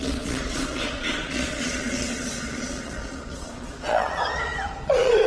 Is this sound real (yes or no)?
no